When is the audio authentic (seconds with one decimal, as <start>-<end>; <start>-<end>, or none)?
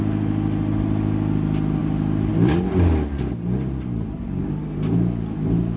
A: 0.0-5.8